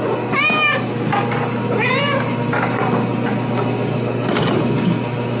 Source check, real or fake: real